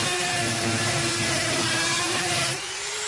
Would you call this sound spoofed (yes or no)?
yes